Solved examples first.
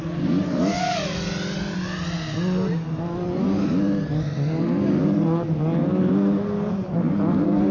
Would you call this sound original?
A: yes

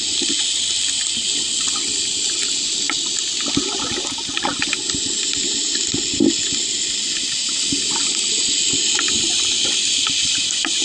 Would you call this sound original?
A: yes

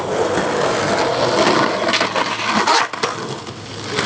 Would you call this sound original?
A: yes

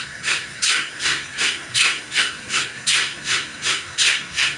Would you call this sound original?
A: no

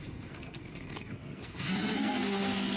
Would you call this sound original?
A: no